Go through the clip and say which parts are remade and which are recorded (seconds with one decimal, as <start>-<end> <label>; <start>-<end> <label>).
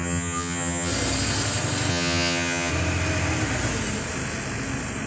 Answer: 0.0-0.9 remade; 0.9-1.9 recorded; 1.9-2.7 remade; 2.7-5.1 recorded